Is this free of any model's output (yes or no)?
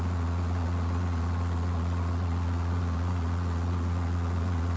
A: no